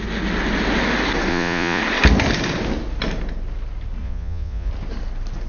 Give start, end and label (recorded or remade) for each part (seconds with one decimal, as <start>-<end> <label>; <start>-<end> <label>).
0.0-1.3 recorded; 1.3-1.8 remade; 1.8-4.0 recorded; 4.0-4.7 remade; 4.7-5.5 recorded